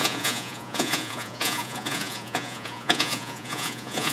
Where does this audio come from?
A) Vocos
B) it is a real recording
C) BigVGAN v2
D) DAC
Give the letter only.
A